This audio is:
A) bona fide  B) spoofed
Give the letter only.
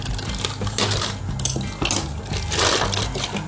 A